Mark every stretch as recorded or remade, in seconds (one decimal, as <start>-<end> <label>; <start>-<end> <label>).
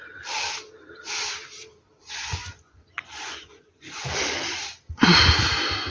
0.0-2.0 recorded; 2.0-4.0 remade; 4.0-5.9 recorded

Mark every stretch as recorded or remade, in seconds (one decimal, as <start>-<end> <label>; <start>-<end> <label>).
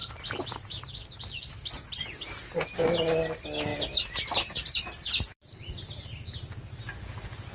0.0-2.5 remade; 2.5-3.7 recorded; 3.7-4.9 remade; 4.9-7.5 recorded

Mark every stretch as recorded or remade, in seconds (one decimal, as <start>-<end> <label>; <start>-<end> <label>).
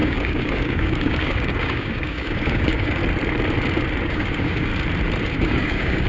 0.0-3.0 remade; 3.0-4.1 recorded; 4.1-4.7 remade; 4.7-5.3 recorded; 5.3-6.1 remade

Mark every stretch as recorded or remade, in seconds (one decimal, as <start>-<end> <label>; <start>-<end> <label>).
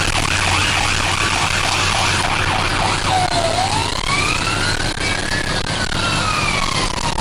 0.0-0.6 recorded; 0.6-2.7 remade; 2.7-3.8 recorded; 3.8-6.6 remade; 6.6-7.2 recorded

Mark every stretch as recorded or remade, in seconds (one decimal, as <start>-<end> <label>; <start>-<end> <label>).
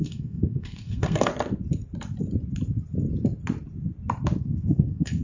0.0-1.3 remade; 1.3-4.4 recorded; 4.4-5.2 remade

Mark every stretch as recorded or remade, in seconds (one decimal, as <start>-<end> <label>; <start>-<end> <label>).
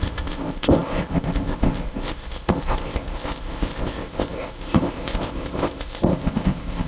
0.0-6.9 remade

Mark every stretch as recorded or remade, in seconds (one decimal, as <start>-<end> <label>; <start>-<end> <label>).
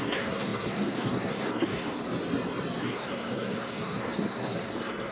0.0-2.0 remade; 2.0-2.8 recorded; 2.8-5.1 remade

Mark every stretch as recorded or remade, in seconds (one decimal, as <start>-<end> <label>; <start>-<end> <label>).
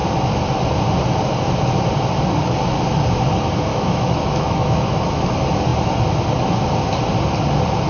0.0-3.7 recorded; 3.7-5.2 remade; 5.2-7.9 recorded